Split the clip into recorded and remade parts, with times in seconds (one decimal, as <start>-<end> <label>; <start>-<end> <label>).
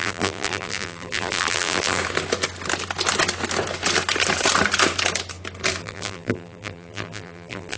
0.0-2.0 remade; 2.0-5.8 recorded; 5.8-7.8 remade